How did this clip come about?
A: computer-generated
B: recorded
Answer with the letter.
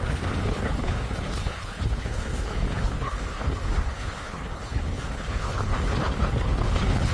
A